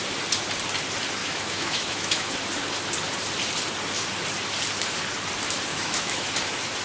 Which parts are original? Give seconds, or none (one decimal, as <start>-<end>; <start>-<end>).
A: 0.0-1.2; 2.3-5.7; 6.3-6.8

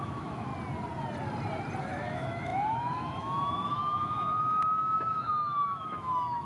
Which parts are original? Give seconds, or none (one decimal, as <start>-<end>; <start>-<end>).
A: 0.5-1.8

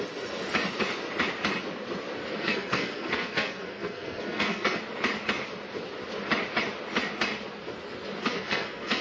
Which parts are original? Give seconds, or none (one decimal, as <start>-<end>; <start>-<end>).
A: 0.0-2.3; 4.8-8.2

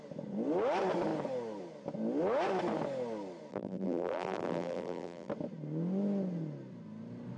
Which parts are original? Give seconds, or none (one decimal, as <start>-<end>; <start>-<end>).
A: 0.0-3.5; 5.3-7.4

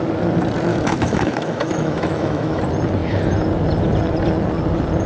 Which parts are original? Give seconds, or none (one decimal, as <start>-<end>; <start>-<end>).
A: 0.0-0.7; 2.6-5.1

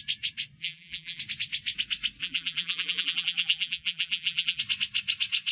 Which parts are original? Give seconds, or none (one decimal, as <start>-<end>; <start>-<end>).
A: 0.0-0.6; 1.2-2.2; 4.6-5.5